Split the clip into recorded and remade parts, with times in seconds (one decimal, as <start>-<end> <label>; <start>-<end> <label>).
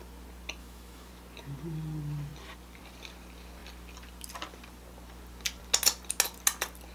0.0-0.6 recorded; 0.6-1.1 remade; 1.1-6.9 recorded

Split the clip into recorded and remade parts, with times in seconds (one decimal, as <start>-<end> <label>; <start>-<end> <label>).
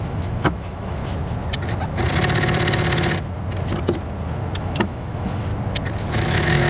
0.0-1.0 remade; 1.0-4.6 recorded; 4.6-5.5 remade; 5.5-6.1 recorded; 6.1-6.7 remade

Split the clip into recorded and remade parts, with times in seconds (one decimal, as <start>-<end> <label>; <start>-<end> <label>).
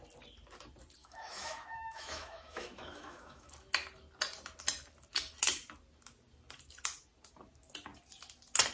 0.0-1.0 recorded; 1.0-3.5 remade; 3.5-8.7 recorded